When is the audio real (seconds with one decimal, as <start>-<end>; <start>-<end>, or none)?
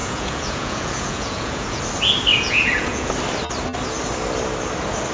1.8-2.3; 3.1-5.1